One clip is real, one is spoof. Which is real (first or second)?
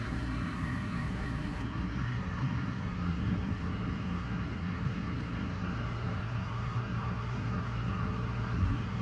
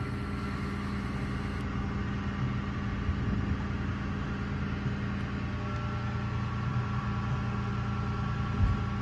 second